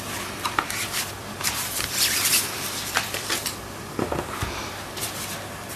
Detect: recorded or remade remade